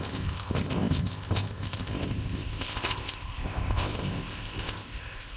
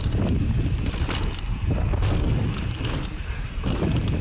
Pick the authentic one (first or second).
second